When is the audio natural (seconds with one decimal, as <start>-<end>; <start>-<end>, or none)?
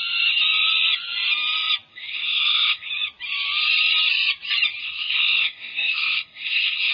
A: 0.0-1.9; 2.9-4.8